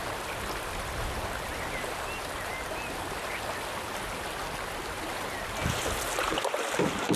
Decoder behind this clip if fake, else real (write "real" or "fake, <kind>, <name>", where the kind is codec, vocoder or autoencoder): real